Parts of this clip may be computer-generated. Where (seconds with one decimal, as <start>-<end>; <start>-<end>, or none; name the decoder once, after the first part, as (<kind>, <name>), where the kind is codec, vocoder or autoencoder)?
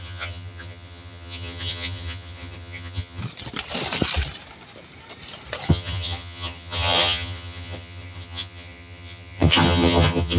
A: 0.0-3.2 (vocoder, HiFi-GAN); 5.7-10.4